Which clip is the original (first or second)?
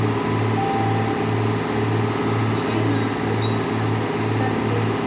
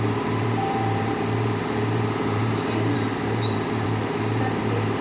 first